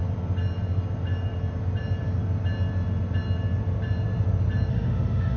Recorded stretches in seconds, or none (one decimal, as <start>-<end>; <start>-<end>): 0.0-4.7